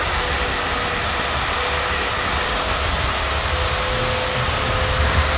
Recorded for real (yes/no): yes